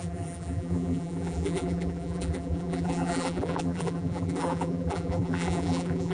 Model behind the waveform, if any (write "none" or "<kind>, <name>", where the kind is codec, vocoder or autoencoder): vocoder, BigVGAN v2